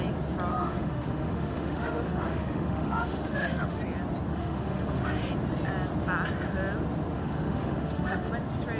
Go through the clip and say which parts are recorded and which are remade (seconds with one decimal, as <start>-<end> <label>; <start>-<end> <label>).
0.0-0.5 recorded; 0.5-3.8 remade; 3.8-4.3 recorded; 4.3-5.3 remade; 5.3-7.1 recorded; 7.1-8.3 remade; 8.3-8.8 recorded